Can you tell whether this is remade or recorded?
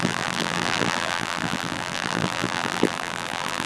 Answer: remade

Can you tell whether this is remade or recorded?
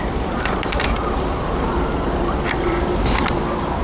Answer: remade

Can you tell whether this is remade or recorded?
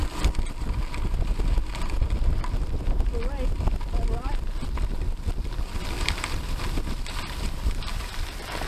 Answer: remade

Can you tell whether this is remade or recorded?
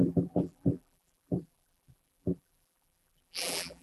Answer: remade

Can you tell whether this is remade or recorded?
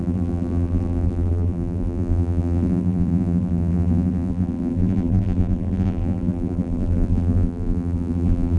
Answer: remade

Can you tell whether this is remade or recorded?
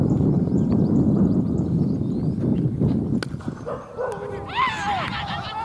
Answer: recorded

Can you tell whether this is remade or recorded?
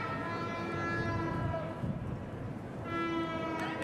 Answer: recorded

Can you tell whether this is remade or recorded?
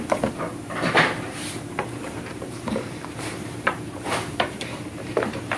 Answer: remade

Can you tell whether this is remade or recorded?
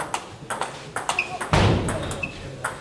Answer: recorded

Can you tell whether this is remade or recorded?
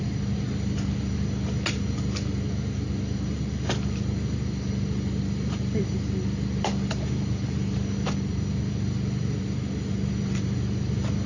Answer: recorded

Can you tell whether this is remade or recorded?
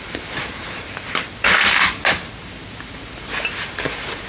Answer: remade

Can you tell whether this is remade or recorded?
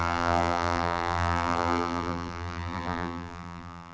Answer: remade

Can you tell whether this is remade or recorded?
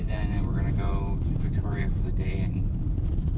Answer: remade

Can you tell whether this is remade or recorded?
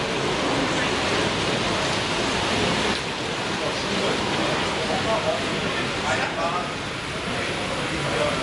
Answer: recorded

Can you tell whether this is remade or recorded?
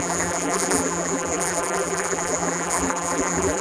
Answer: remade